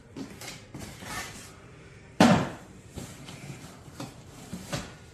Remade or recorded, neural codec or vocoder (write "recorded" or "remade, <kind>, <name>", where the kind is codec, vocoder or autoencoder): remade, vocoder, BigVGAN v2